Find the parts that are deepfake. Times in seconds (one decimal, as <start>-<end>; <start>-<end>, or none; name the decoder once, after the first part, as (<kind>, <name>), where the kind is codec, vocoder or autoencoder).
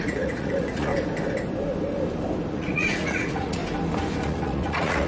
0.0-0.9 (vocoder, Vocos); 2.5-3.6; 4.2-5.1